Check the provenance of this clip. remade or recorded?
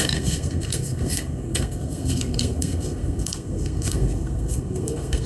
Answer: remade